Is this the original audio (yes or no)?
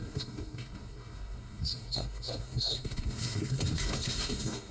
no